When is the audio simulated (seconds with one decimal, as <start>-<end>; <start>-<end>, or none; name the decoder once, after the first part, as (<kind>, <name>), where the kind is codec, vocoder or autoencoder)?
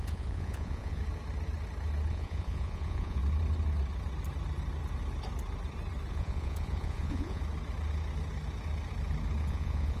0.0-1.0 (vocoder, Vocos); 2.1-3.2; 6.1-7.4; 9.4-10.0